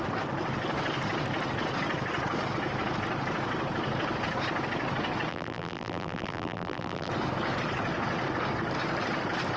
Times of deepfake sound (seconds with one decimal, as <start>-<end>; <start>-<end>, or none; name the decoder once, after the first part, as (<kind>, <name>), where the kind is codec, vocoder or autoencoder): 5.3-7.1 (vocoder, BigVGAN v2)